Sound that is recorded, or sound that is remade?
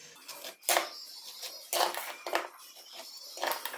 recorded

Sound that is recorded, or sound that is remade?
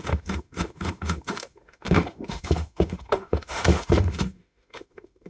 remade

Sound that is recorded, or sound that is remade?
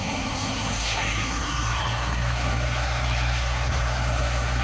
remade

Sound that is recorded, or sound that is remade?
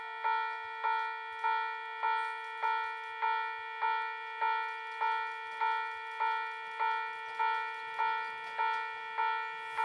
recorded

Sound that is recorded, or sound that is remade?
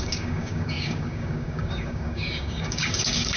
remade